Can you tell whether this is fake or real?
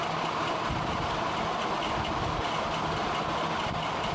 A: real